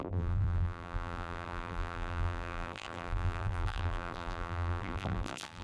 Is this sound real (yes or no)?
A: no